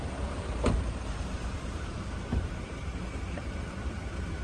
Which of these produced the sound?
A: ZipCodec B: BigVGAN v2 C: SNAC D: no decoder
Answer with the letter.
B